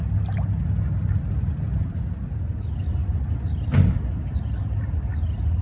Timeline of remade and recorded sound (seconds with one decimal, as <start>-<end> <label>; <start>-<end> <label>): 0.0-5.6 recorded